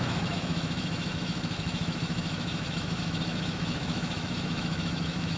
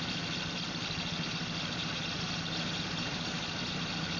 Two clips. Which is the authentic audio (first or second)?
second